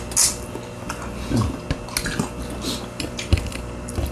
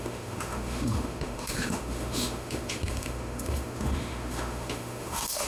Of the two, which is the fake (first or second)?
second